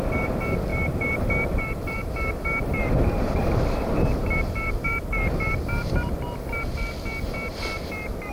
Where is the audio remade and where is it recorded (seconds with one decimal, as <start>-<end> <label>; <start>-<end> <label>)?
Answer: 0.0-0.7 recorded; 0.7-5.4 remade; 5.4-8.3 recorded